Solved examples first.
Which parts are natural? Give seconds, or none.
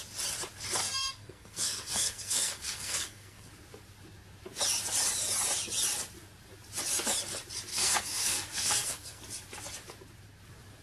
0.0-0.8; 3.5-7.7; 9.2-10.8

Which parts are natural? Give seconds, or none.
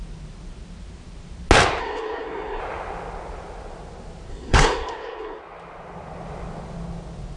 0.0-1.8; 2.6-4.3; 5.4-7.4